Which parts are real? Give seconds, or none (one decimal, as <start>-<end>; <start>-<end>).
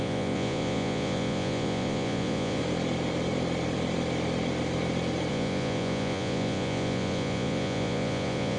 2.6-5.3